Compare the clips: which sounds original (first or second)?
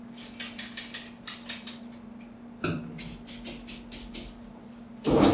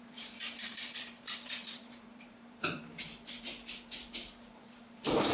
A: first